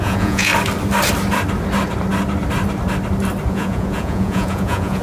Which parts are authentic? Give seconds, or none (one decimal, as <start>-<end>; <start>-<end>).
0.5-3.5